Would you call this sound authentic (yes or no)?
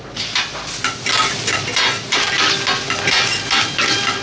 yes